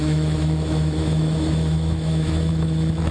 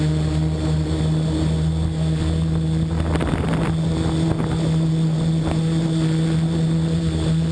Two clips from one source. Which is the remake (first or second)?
first